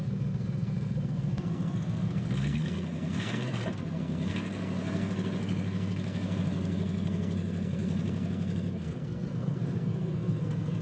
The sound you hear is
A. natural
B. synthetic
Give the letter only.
B